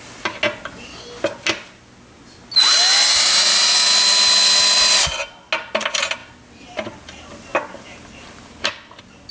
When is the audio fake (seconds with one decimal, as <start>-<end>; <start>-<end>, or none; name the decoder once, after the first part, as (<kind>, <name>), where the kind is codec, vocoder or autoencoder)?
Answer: none